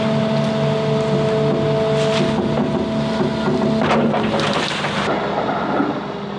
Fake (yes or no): no